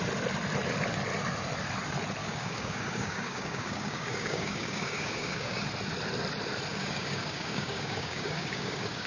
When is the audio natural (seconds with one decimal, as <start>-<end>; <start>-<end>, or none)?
0.0-2.2; 5.6-6.7